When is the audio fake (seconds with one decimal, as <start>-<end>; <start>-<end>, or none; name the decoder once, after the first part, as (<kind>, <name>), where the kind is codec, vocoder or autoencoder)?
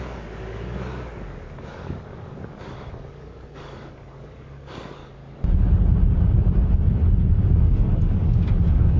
0.0-5.2 (codec, DAC); 7.6-9.0